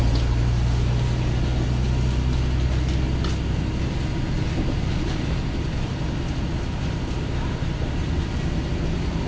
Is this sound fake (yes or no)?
no